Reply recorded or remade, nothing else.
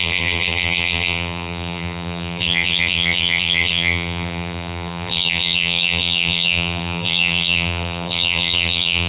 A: remade